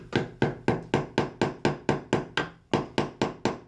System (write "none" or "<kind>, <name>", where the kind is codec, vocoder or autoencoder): none